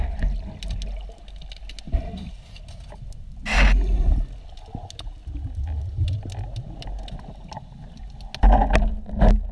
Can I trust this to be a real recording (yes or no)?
yes